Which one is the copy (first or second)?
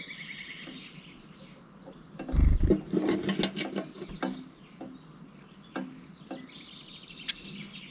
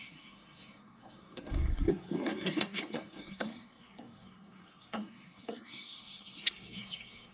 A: second